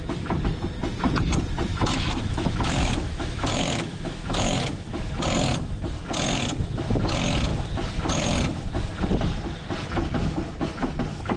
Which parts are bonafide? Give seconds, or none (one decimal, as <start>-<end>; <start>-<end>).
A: 0.0-1.7; 5.2-11.4

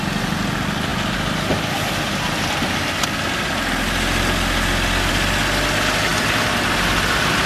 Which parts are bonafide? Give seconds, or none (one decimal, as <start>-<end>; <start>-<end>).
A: 0.0-7.5

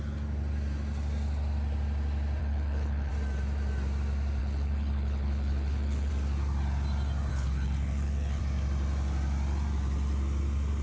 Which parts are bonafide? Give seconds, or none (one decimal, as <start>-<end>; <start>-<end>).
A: 0.0-2.4; 3.1-4.4; 6.1-7.3; 8.4-10.8

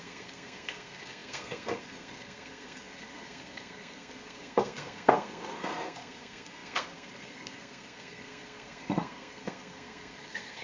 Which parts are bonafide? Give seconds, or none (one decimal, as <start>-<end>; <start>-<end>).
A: none

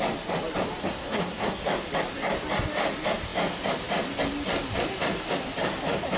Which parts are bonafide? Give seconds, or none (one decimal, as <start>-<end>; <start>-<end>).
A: 0.0-0.8; 1.6-6.2

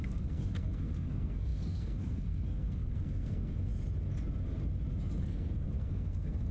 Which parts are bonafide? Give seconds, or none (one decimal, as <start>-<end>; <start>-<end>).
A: 3.7-5.2

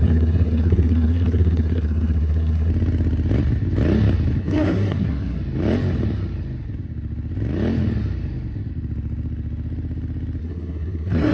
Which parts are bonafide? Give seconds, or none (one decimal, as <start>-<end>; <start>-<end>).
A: 2.7-4.4; 5.4-10.4